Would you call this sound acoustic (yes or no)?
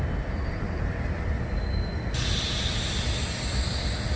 yes